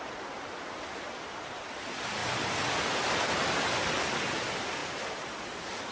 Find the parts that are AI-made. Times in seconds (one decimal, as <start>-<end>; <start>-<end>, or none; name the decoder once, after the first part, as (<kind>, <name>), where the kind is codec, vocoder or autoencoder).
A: 4.8-5.9 (vocoder, BigVGAN v2)